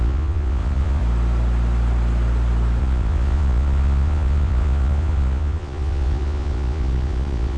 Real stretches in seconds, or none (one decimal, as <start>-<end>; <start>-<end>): 1.0-2.8